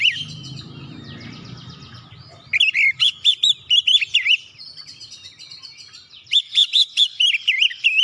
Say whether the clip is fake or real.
real